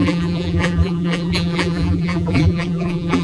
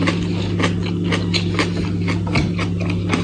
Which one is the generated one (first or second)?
first